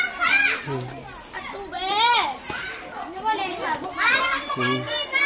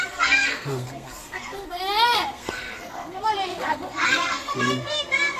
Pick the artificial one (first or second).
second